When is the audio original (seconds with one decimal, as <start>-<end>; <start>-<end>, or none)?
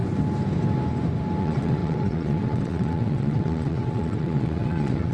0.0-1.4